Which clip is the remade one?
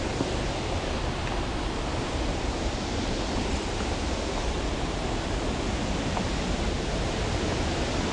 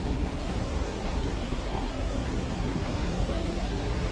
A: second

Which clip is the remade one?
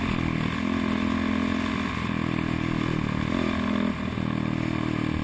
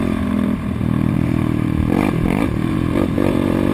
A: second